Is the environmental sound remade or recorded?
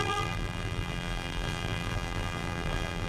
remade